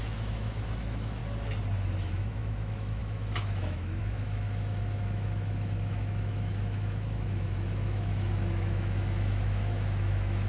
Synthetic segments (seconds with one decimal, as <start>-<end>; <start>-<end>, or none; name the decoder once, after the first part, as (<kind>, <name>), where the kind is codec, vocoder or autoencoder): 0.0-1.2 (autoencoder, DAC-VAE); 2.0-10.5